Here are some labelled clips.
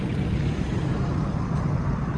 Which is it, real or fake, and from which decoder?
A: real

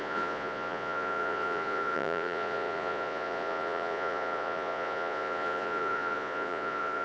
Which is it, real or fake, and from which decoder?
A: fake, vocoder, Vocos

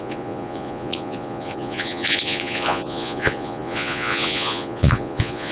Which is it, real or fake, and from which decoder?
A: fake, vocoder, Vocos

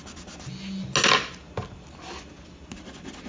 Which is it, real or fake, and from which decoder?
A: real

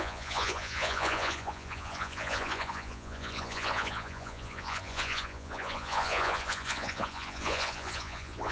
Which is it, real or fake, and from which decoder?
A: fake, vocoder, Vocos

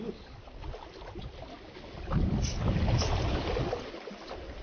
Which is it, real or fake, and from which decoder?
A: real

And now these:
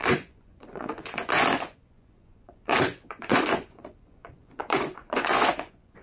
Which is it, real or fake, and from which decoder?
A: fake, vocoder, Vocos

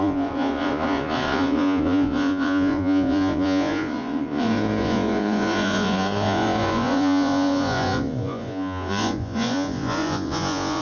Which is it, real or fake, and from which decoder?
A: fake, vocoder, Vocos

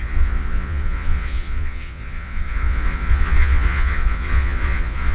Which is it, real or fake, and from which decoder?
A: fake, vocoder, Vocos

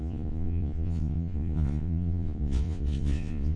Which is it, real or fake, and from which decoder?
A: fake, vocoder, Vocos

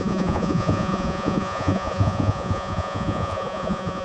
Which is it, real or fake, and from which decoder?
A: fake, vocoder, Vocos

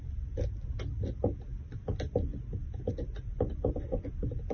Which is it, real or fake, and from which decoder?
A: real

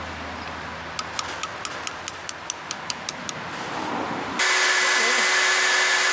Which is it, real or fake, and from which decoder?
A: real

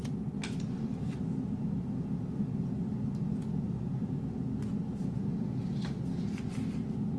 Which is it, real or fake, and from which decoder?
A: real